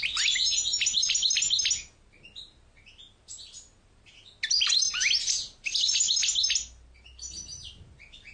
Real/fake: real